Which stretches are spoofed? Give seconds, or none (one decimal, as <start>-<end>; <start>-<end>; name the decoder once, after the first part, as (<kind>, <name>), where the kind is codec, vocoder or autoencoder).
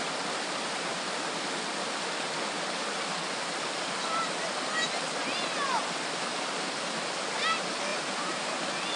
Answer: 7.9-8.6 (vocoder, BigVGAN v2)